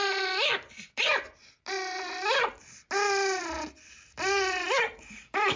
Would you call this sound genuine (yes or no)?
yes